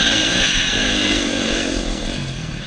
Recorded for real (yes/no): no